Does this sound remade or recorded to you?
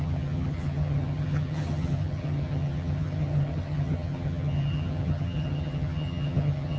remade